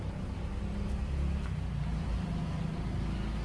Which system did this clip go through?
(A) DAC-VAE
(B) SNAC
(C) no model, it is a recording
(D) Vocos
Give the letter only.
C